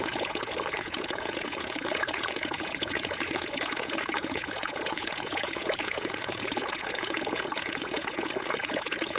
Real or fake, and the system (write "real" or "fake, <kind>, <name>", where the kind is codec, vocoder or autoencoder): fake, vocoder, Vocos